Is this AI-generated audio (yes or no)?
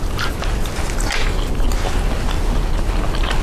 no